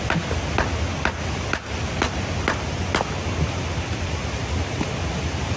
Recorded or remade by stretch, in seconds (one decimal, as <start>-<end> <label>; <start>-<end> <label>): 0.0-5.6 recorded